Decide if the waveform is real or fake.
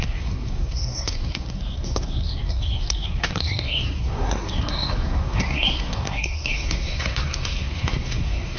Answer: fake